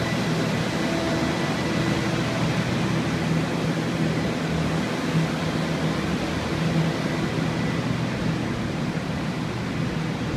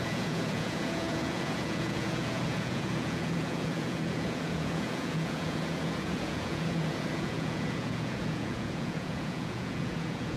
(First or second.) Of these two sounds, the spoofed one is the second